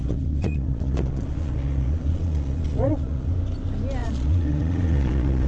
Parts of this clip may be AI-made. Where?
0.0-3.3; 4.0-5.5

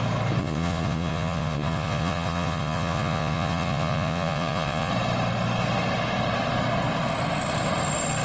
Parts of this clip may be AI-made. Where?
0.4-4.9

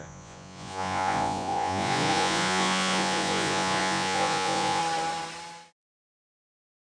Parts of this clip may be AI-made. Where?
0.0-4.8; 5.8-6.8

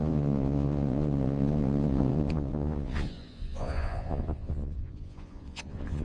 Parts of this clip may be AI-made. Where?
0.0-6.0

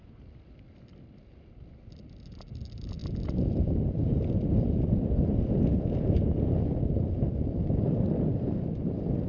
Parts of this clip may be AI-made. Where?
none

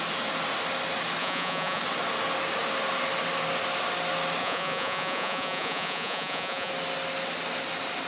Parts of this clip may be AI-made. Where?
1.2-1.8; 4.4-6.7

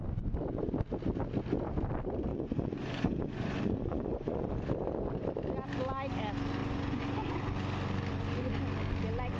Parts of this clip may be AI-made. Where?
2.3-4.5; 6.6-7.4